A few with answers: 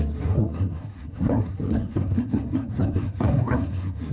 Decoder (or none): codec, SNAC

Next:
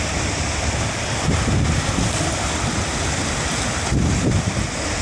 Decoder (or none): none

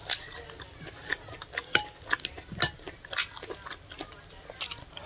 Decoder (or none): none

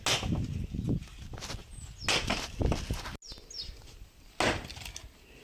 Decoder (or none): none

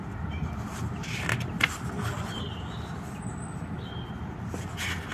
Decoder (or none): none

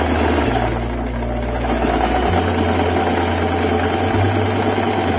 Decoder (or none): none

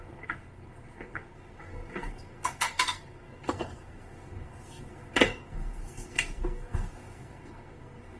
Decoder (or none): codec, SNAC